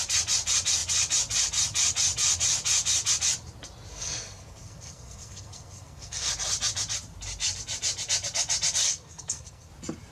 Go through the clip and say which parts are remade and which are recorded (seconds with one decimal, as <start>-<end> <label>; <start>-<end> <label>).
0.0-3.9 recorded; 3.9-6.3 remade; 6.3-8.8 recorded; 8.8-9.7 remade; 9.7-10.1 recorded